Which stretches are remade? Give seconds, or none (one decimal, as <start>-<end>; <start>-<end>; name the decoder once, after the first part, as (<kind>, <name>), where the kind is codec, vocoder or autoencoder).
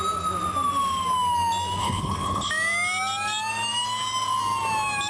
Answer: 1.8-2.5 (codec, HILCodec)